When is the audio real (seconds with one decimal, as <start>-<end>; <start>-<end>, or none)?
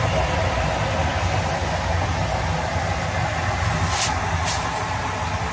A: 1.1-4.4